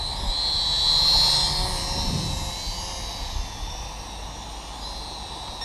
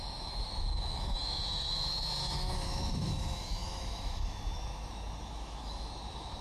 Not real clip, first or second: second